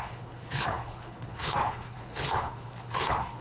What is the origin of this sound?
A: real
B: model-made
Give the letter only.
B